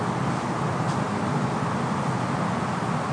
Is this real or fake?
real